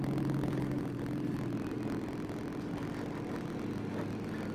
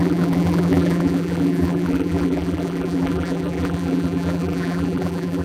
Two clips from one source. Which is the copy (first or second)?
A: second